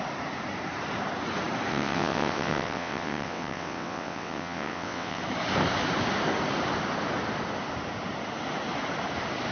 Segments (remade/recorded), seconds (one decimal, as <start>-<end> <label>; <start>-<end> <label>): 0.0-1.7 recorded; 1.7-5.2 remade; 5.2-9.5 recorded